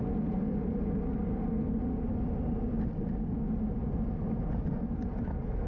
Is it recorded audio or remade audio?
recorded